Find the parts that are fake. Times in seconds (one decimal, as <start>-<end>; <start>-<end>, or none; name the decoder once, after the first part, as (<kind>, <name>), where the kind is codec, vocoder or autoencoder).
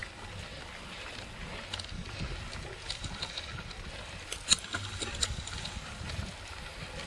none